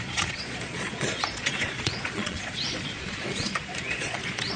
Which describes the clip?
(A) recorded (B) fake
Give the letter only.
B